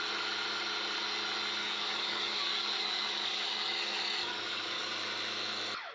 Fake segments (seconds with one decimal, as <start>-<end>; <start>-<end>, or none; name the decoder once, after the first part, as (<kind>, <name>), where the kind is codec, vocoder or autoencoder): 1.6-4.9 (codec, DAC)